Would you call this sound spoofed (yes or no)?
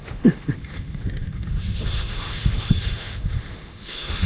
yes